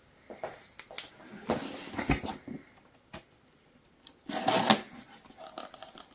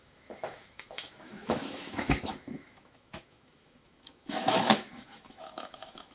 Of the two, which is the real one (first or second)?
first